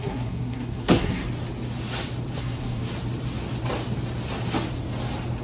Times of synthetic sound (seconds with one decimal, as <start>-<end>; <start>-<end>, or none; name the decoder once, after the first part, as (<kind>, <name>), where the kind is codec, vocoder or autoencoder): 0.0-1.2 (codec, SNAC); 2.4-2.8